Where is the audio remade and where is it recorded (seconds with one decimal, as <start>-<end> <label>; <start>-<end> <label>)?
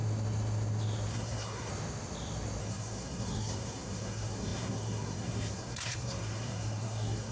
0.0-1.1 recorded; 1.1-1.7 remade; 1.7-2.6 recorded; 2.6-7.3 remade